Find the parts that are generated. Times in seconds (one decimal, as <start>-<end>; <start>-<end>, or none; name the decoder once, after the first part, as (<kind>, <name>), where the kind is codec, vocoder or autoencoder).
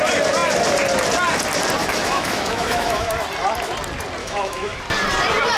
1.8-3.1 (autoencoder, DAC-VAE); 4.2-4.8